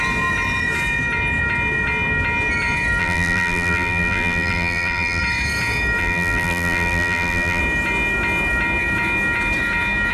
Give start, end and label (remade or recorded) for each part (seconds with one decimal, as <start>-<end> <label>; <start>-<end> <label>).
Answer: 0.0-3.0 recorded; 3.0-5.2 remade; 5.2-6.0 recorded; 6.0-7.6 remade; 7.6-10.1 recorded